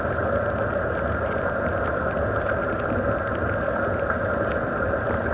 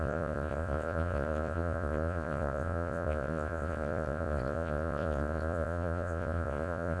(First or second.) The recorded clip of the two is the first